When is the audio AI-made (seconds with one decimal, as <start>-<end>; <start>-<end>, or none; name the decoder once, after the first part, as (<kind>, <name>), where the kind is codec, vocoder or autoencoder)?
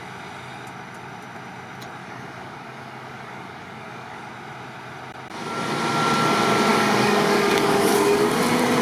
2.0-4.2 (codec, DAC); 6.7-8.4